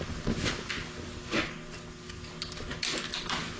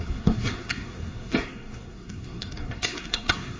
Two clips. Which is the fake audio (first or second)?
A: second